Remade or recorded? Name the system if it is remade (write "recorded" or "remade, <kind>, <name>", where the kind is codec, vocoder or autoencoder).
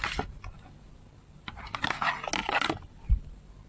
recorded